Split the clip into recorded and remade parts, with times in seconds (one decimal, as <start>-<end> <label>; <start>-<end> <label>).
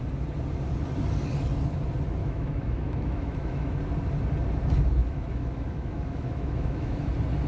0.0-2.2 recorded; 2.2-3.8 remade; 3.8-5.0 recorded; 5.0-7.1 remade; 7.1-7.5 recorded